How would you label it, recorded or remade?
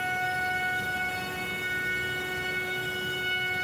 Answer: recorded